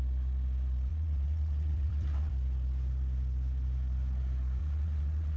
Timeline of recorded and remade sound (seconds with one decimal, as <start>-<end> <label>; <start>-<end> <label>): 0.0-0.9 recorded; 0.9-2.3 remade; 2.3-4.6 recorded; 4.6-5.4 remade